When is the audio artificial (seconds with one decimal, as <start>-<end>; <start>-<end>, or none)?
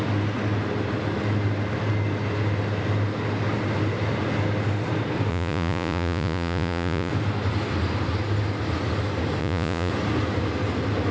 5.3-7.1; 9.4-9.9